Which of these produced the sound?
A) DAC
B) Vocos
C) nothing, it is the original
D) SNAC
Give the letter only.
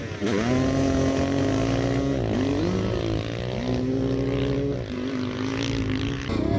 C